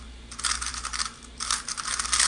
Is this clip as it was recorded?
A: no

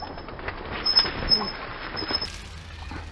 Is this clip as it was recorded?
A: yes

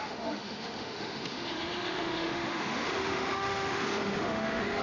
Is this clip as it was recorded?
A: no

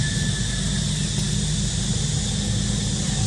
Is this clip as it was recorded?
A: yes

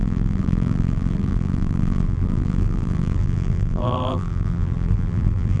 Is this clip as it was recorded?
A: no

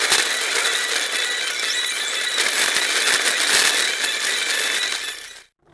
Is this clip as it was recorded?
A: yes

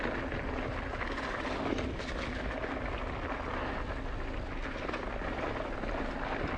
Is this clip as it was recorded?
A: yes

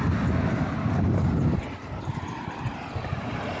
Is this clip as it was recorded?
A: yes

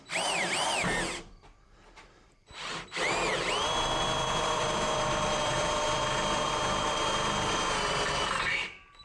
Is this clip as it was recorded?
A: no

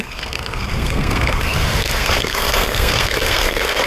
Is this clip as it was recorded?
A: no